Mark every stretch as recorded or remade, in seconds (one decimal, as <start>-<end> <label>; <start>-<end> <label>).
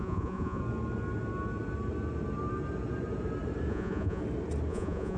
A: 0.0-0.6 remade; 0.6-3.7 recorded; 3.7-4.2 remade; 4.2-4.7 recorded; 4.7-5.2 remade